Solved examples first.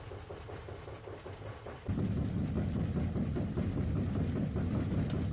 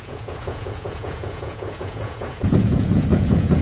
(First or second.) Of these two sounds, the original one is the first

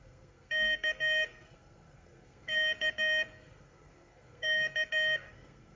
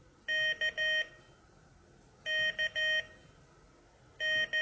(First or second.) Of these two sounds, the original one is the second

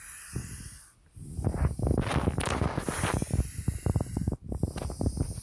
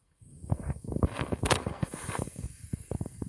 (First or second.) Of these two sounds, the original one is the first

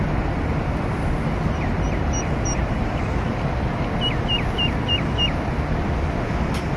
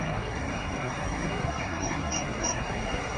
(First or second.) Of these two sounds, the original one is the first